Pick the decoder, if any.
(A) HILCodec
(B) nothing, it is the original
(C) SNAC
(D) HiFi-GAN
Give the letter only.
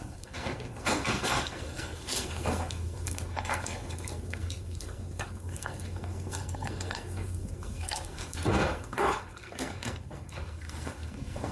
C